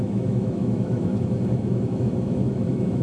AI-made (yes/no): yes